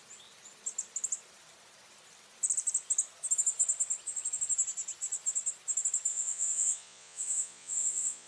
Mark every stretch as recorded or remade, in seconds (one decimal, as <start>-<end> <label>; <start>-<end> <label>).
0.0-6.1 recorded; 6.1-8.3 remade